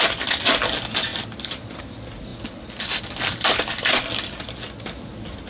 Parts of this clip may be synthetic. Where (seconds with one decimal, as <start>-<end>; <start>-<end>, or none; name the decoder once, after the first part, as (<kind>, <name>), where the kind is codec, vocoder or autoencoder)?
none